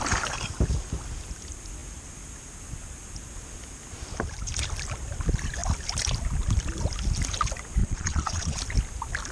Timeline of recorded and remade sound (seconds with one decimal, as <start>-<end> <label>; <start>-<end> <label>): 0.0-7.8 recorded; 7.8-8.6 remade; 8.6-9.3 recorded